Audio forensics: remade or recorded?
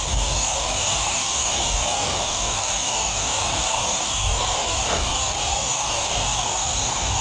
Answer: remade